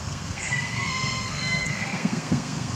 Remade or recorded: remade